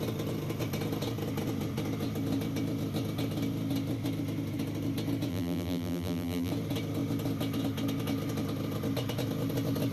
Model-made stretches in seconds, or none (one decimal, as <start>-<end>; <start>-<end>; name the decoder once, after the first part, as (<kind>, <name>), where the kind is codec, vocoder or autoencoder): 5.3-6.5 (vocoder, BigVGAN v2)